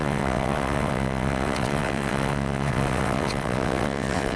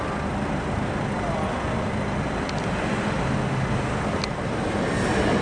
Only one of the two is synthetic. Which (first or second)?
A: first